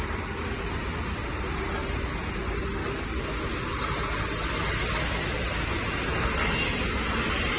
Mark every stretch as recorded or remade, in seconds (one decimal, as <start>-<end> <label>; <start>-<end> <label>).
0.0-1.8 recorded; 1.8-2.6 remade; 2.6-7.6 recorded